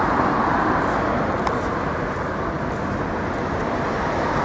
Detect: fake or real real